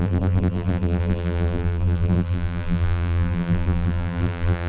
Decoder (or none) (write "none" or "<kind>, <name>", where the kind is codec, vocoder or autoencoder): vocoder, BigVGAN v2